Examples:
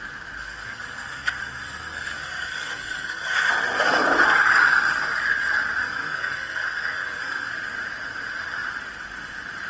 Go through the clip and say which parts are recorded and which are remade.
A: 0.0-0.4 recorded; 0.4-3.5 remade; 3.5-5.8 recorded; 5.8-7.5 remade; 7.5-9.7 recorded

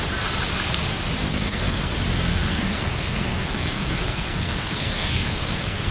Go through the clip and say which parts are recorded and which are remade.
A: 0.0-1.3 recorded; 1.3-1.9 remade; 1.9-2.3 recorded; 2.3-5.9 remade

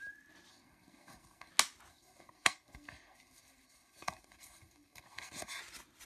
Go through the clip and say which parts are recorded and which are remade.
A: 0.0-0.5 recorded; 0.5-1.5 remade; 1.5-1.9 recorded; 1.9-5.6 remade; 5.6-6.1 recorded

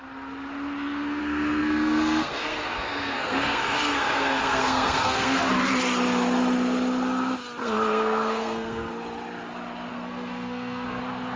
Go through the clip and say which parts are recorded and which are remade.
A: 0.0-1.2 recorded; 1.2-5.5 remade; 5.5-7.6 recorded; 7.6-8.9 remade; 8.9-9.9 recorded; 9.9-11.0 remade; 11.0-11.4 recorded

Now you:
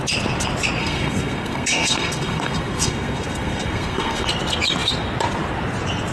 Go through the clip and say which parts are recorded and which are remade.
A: 0.0-0.8 recorded; 0.8-4.3 remade; 4.3-6.1 recorded

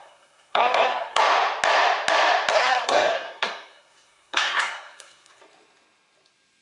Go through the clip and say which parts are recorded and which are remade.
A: 0.0-1.2 remade; 1.2-2.5 recorded; 2.5-5.4 remade; 5.4-6.6 recorded

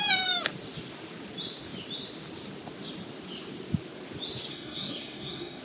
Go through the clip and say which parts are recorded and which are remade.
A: 0.0-4.5 recorded; 4.5-5.6 remade

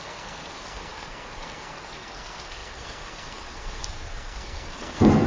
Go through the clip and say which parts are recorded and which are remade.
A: 0.0-5.3 remade